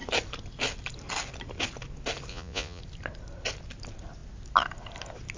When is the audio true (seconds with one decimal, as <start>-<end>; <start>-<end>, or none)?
0.0-2.3; 2.8-5.4